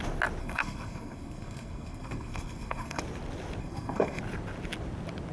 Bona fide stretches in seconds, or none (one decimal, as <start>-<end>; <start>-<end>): 0.0-0.4; 3.0-3.6; 4.2-5.3